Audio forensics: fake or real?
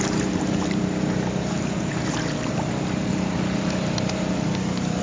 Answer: fake